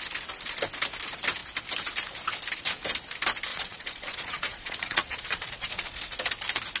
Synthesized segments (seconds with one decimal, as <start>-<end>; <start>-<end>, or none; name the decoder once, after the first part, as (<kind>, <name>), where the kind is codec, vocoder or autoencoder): 3.5-6.0 (vocoder, Vocos)